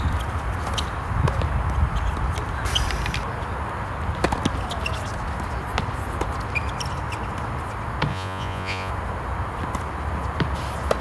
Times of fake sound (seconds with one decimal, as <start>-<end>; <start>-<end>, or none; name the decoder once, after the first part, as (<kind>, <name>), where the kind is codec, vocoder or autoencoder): 8.1-8.9 (vocoder, Vocos)